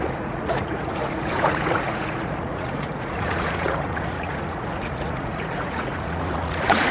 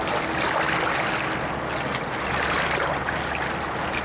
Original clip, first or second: second